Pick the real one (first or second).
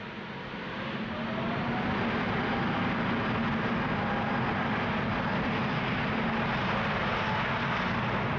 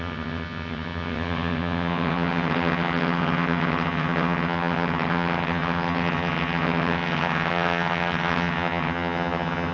first